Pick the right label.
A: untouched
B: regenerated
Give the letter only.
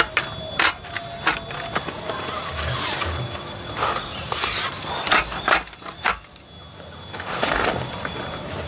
A